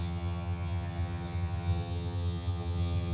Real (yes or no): no